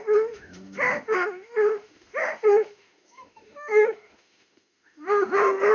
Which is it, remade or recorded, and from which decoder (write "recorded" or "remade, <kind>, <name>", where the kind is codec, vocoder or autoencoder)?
remade, autoencoder, DAC-VAE